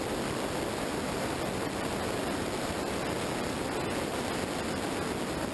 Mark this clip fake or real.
real